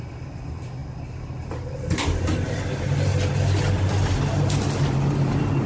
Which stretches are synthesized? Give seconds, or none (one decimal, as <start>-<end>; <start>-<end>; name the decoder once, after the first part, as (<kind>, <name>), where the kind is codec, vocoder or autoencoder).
none